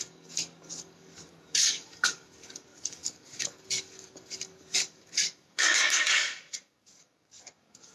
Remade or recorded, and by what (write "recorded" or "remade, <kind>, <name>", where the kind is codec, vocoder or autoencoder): remade, codec, DAC